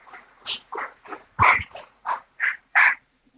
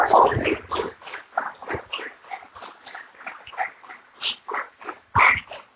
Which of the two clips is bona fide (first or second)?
second